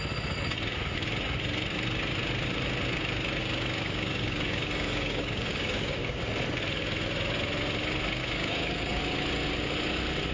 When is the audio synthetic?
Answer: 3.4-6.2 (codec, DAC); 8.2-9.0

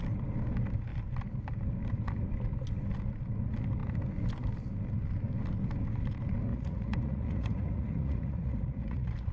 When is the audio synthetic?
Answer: 6.5-9.3 (vocoder, Vocos)

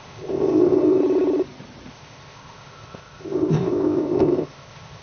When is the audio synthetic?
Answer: 0.0-1.0 (codec, ZipCodec); 1.9-5.0

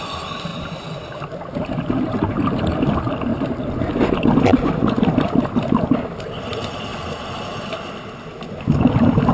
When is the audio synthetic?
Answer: 0.0-3.3 (vocoder, BigVGAN v2); 6.2-9.3

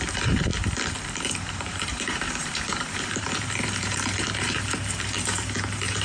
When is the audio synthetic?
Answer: 0.0-0.5 (vocoder, BigVGAN v2); 1.3-6.0

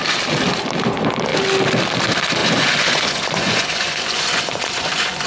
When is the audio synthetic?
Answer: 2.4-5.3 (vocoder, Vocos)

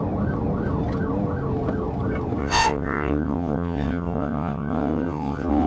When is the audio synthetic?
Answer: 2.4-5.7 (vocoder, WaveNeXt)